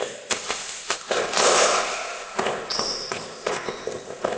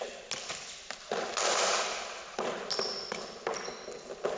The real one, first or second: second